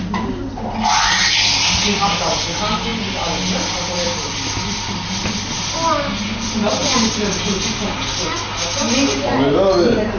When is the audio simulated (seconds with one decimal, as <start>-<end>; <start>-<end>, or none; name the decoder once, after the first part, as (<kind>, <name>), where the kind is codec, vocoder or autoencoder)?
none